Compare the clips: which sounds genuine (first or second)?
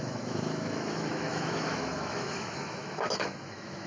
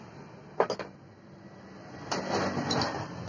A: second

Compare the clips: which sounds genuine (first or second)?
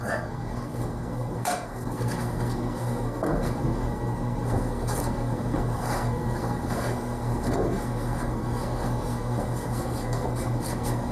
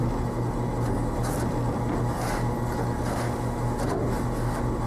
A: second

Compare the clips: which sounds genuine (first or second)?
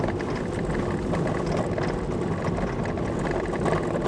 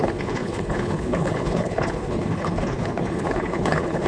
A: first